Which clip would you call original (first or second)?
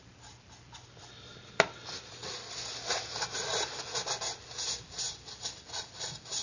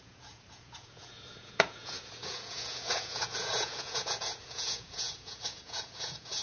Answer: first